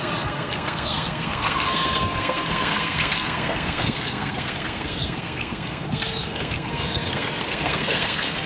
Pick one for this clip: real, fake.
fake